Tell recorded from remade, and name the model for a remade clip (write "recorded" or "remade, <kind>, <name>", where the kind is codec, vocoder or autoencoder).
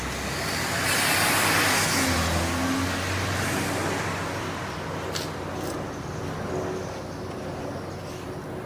recorded